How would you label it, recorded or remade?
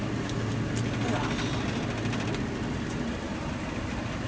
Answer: recorded